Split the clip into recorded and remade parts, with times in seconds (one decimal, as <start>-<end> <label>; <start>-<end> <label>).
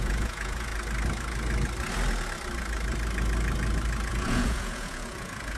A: 0.0-0.7 remade; 0.7-4.1 recorded; 4.1-5.6 remade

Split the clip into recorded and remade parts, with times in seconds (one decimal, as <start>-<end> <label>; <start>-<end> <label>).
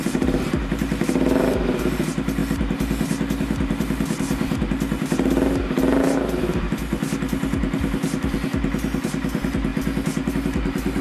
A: 0.0-11.0 recorded